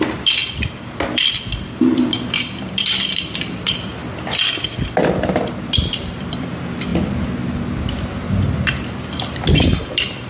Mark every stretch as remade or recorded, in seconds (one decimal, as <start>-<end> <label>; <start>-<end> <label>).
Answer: 0.0-0.4 remade; 0.4-1.5 recorded; 1.5-4.0 remade; 4.0-6.2 recorded; 6.2-6.9 remade; 6.9-9.8 recorded; 9.8-10.3 remade